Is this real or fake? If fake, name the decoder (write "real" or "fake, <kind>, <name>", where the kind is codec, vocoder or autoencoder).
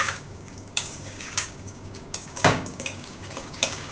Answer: fake, codec, DAC